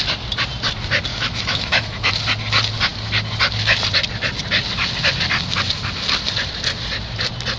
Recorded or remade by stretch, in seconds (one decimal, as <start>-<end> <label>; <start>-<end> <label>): 0.0-1.1 recorded; 1.1-2.1 remade; 2.1-7.6 recorded